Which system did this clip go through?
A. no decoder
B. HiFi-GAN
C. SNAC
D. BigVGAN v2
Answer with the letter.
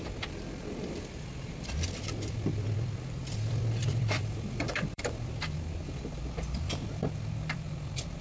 D